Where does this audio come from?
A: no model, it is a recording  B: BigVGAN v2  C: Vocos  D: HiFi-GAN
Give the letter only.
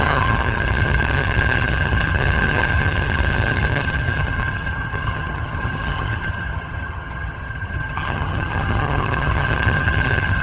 D